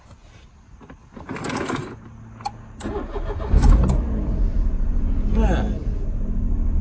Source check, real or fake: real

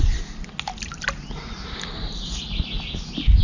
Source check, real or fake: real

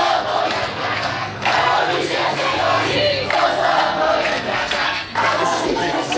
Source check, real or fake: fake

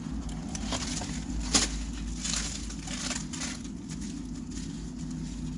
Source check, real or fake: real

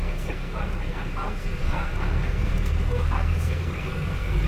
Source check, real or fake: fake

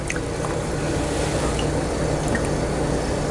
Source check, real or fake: real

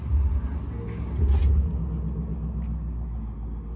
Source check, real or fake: real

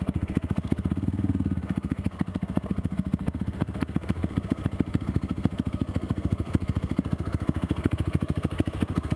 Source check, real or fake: fake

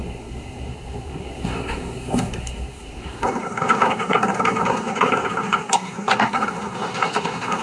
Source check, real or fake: fake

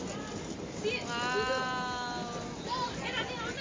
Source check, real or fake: real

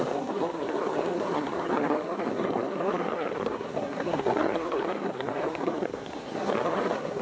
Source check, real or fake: fake